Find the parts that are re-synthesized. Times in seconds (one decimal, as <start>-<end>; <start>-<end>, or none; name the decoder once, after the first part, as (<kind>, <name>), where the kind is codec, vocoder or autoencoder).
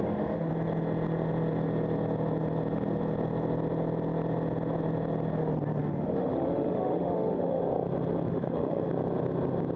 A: 0.0-0.5 (autoencoder, DAC-VAE); 5.8-7.6; 8.3-8.9